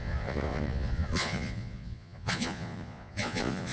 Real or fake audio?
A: fake